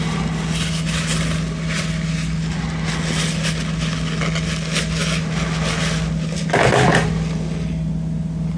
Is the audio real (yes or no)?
yes